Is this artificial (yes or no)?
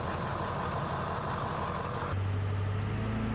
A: no